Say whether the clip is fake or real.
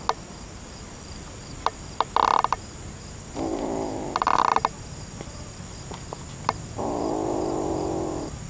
real